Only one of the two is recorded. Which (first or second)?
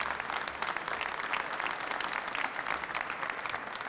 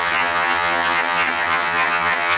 first